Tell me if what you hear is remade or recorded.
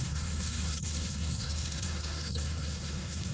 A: remade